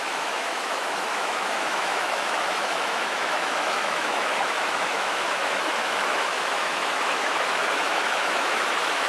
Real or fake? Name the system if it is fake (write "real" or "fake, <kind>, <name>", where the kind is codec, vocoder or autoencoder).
fake, autoencoder, DAC-VAE